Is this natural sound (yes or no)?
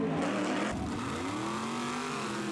yes